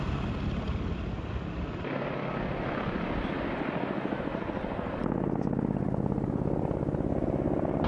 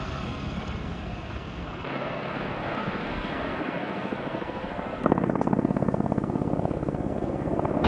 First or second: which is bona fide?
first